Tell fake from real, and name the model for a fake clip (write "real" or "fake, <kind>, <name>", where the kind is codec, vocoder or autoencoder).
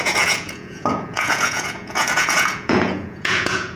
fake, vocoder, Vocos